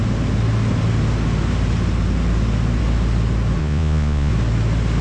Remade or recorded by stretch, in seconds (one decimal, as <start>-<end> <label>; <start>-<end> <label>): 0.0-3.6 recorded; 3.6-4.3 remade; 4.3-5.0 recorded